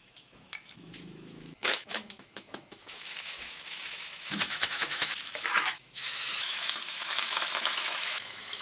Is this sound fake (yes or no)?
yes